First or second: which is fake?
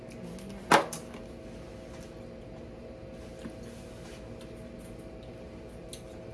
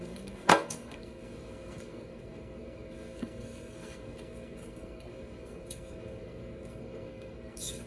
second